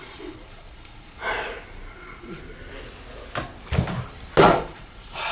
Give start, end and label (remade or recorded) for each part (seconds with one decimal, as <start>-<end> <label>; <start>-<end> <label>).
0.0-1.2 remade; 1.2-1.9 recorded; 1.9-2.4 remade; 2.4-4.4 recorded; 4.4-5.3 remade